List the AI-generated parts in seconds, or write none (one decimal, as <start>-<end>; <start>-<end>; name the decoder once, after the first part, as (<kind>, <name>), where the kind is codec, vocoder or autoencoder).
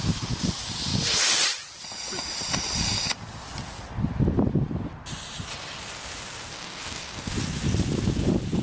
6.5-7.3 (codec, DAC)